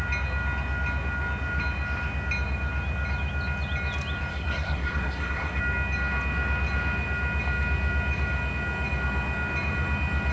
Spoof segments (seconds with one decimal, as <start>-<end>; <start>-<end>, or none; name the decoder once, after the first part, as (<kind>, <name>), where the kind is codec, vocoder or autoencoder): 4.3-5.6 (codec, SNAC)